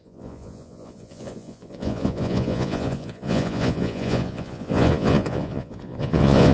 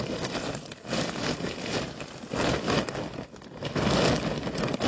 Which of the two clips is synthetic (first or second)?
first